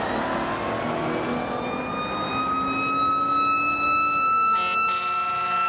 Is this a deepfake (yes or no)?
no